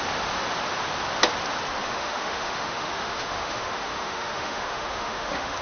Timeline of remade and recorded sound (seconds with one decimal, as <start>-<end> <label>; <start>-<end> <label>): 0.0-1.8 recorded; 1.8-5.6 remade